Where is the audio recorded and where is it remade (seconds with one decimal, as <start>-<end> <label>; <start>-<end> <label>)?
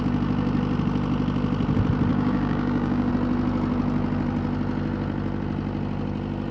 0.0-2.1 recorded; 2.1-3.1 remade; 3.1-6.5 recorded